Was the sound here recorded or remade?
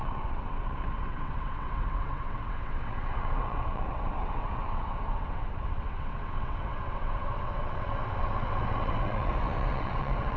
remade